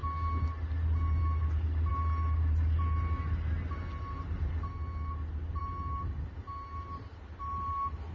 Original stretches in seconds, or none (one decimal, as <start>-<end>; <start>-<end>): 0.0-8.1